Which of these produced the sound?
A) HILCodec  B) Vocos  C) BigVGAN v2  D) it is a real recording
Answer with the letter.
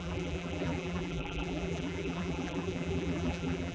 C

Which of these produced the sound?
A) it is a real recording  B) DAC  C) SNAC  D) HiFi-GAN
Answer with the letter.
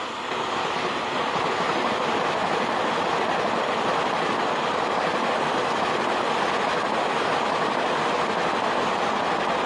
A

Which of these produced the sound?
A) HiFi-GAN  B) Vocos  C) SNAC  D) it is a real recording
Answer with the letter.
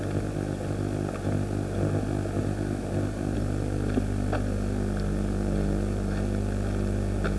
D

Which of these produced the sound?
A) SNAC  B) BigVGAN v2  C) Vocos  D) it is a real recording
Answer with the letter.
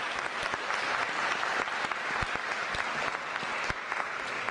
D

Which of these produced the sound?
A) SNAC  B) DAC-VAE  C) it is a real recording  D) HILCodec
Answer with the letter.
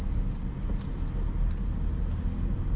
C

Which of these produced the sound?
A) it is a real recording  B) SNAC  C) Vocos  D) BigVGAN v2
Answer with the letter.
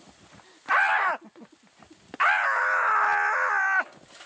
A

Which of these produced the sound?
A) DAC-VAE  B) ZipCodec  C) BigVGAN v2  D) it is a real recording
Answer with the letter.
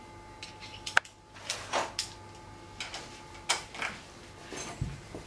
D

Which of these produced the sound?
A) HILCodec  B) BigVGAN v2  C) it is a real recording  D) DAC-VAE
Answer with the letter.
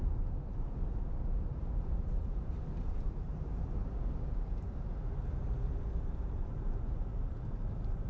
B